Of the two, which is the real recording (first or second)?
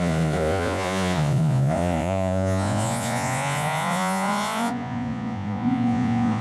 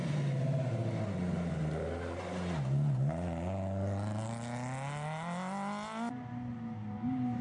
second